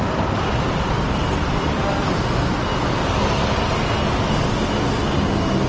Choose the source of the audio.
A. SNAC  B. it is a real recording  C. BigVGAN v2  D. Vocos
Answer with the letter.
B